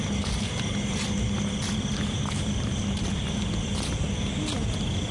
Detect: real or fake real